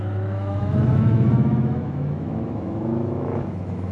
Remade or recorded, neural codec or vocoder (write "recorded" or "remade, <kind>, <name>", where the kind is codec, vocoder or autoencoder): remade, autoencoder, DAC-VAE